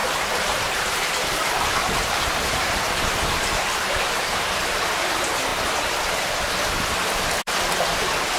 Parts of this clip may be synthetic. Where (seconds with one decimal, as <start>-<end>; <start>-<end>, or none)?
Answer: 0.0-4.9